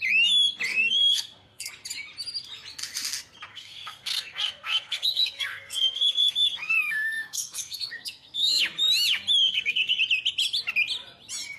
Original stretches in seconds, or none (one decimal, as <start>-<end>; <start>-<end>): 0.0-0.7; 1.7-3.5; 8.6-9.4; 10.0-11.6